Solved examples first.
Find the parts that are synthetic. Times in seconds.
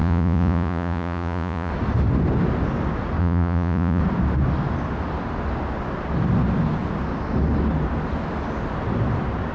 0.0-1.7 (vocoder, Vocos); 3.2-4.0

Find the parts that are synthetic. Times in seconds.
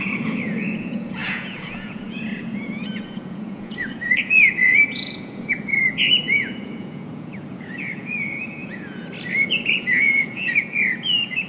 0.0-11.5 (vocoder, Vocos)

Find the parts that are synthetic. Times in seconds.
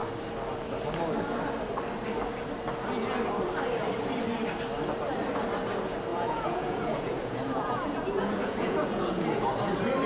6.1-9.5 (vocoder, Vocos)